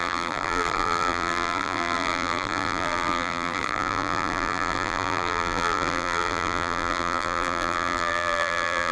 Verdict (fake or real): fake